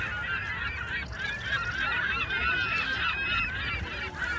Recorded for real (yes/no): yes